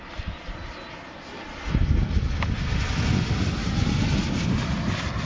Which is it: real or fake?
real